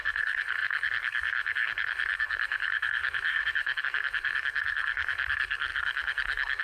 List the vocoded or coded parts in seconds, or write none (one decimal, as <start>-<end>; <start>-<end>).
0.0-6.6